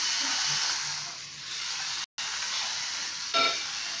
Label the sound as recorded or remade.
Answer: recorded